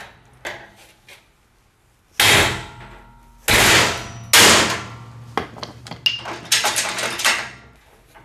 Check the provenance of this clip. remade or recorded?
recorded